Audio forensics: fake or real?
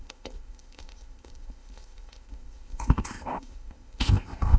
fake